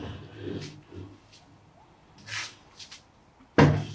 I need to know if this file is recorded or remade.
recorded